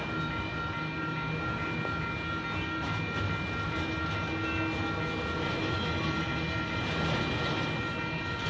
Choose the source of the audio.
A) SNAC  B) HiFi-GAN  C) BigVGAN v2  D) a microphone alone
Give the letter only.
D